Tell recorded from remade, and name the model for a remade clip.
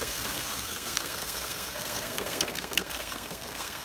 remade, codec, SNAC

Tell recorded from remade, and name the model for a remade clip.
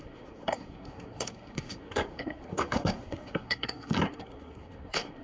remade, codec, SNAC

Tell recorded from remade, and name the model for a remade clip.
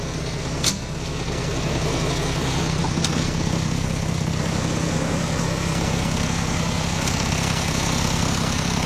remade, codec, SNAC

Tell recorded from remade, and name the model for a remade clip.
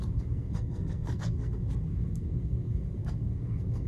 remade, codec, SNAC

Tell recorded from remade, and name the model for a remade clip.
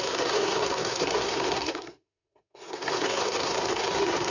remade, codec, SNAC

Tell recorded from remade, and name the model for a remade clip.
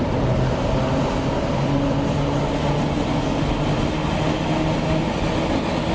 recorded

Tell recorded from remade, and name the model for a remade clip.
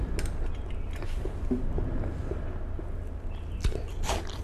recorded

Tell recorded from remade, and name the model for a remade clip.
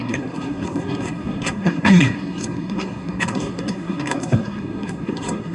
remade, codec, SNAC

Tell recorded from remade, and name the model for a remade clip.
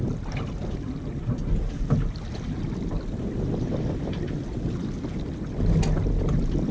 recorded